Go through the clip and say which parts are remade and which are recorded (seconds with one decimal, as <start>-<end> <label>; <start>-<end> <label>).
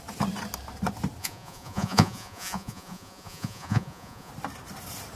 0.0-1.2 recorded; 1.2-4.3 remade; 4.3-5.2 recorded